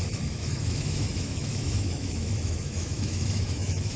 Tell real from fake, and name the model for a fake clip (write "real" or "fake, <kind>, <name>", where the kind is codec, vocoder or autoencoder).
fake, autoencoder, DAC-VAE